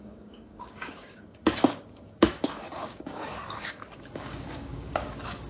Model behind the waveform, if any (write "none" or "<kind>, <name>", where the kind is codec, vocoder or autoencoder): codec, DAC